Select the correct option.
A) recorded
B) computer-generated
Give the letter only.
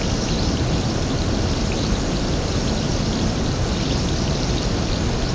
A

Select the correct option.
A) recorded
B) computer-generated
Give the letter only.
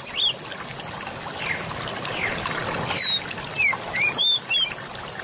A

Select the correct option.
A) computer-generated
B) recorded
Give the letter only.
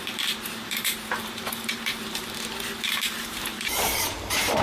A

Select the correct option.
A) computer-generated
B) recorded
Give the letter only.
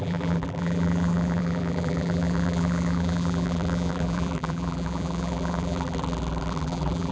A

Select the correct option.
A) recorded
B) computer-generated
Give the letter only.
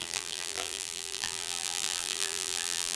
B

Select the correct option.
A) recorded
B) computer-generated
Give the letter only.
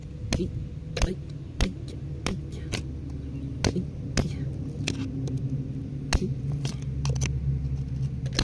A